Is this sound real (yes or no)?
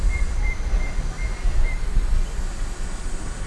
yes